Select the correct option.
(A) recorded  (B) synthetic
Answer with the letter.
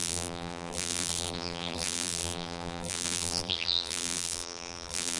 B